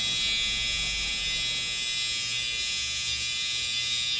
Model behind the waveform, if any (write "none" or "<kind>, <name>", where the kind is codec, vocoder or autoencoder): none